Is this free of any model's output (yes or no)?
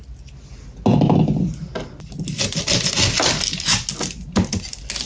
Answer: yes